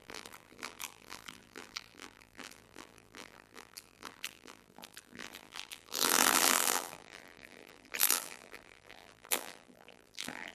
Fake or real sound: fake